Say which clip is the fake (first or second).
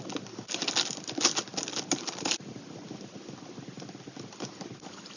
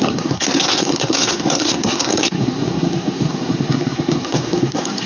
second